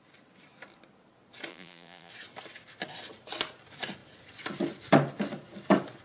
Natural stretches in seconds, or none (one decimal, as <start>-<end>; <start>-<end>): 0.0-1.5; 2.1-6.0